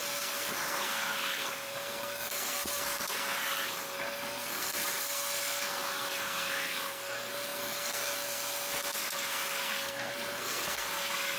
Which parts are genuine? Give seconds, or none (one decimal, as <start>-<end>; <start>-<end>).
none